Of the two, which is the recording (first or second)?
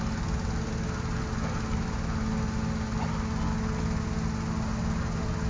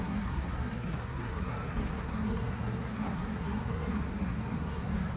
first